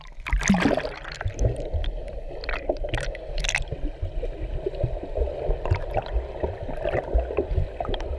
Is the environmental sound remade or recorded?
recorded